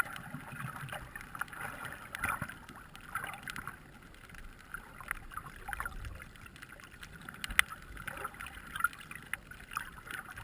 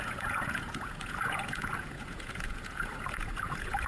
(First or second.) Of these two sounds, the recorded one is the first